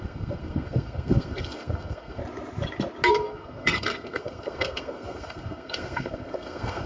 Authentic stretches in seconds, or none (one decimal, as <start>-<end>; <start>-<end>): 2.2-3.1